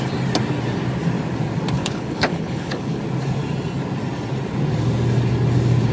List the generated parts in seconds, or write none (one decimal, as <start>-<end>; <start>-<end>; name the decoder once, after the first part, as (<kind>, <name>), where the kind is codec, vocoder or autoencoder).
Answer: 1.8-3.0 (codec, HILCodec)